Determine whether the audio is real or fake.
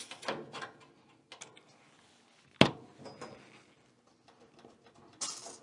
real